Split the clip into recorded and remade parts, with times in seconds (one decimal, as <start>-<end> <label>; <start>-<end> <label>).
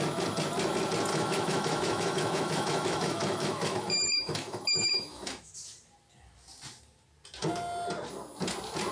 0.0-1.1 recorded; 1.1-5.5 remade; 5.5-8.9 recorded